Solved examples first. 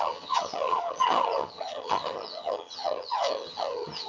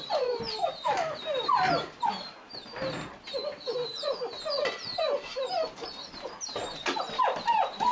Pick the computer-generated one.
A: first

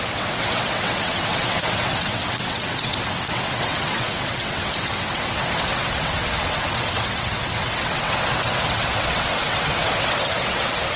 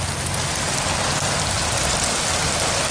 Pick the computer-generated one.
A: first